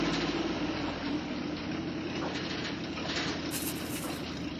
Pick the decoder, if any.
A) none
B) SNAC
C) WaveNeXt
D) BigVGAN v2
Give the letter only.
A